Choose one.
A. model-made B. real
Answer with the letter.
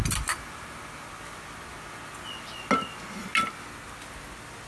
B